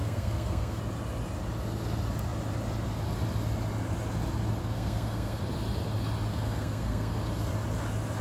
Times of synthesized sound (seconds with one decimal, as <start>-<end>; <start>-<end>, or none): 0.0-0.8; 4.6-5.4; 6.3-7.2